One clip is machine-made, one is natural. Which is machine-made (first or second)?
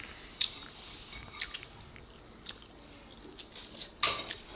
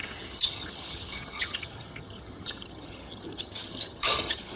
second